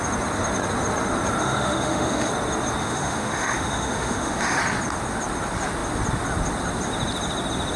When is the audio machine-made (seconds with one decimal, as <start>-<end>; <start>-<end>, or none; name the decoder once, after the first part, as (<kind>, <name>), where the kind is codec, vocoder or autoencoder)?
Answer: 1.4-2.3 (autoencoder, DAC-VAE); 2.8-4.6